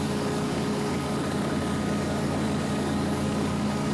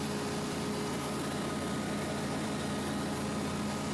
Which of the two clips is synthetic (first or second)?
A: first